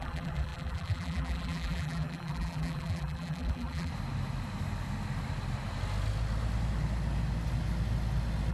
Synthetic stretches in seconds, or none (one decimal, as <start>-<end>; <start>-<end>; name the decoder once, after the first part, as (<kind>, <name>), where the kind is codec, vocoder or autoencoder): 0.0-3.9 (vocoder, BigVGAN v2)